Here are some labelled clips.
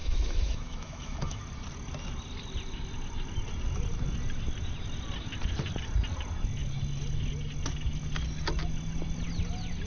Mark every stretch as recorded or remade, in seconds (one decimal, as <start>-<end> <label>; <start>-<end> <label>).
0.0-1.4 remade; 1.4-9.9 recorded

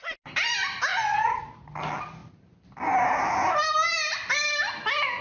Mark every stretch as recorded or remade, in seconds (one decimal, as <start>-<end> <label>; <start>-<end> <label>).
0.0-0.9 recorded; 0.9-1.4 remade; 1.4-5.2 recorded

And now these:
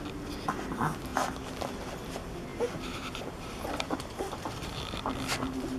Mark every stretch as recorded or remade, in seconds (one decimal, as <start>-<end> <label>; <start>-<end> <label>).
0.0-2.5 recorded; 2.5-5.1 remade; 5.1-5.8 recorded

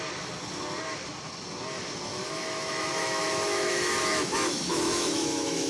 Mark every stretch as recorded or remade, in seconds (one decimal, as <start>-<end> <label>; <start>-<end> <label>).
0.0-2.1 recorded; 2.1-5.7 remade